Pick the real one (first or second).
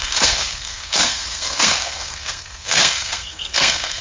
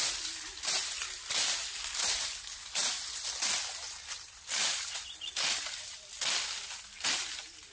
second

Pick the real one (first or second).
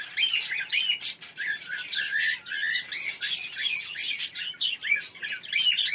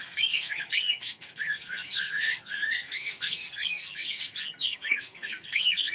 first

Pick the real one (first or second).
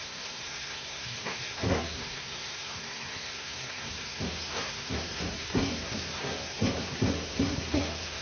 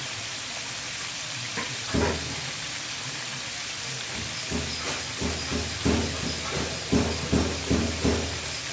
second